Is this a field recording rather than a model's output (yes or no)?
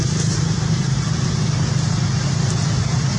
yes